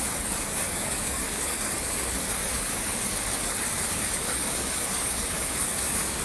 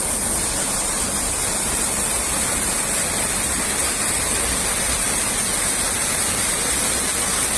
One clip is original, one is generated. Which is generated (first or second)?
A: first